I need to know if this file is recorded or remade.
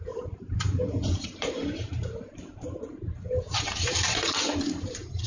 remade